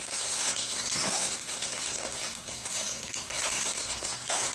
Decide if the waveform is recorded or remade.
remade